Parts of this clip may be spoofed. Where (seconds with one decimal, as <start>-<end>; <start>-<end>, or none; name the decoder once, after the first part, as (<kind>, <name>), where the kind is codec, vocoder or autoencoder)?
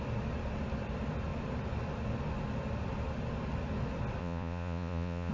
4.2-5.3 (vocoder, Vocos)